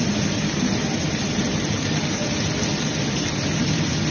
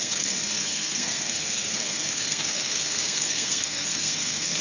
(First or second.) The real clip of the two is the first